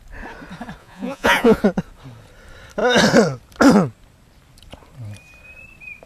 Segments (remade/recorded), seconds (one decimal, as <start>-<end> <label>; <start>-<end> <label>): 0.0-0.8 recorded; 0.8-1.6 remade; 1.6-6.1 recorded